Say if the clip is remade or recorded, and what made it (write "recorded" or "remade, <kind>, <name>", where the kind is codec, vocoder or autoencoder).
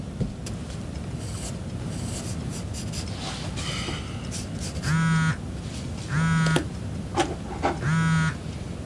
recorded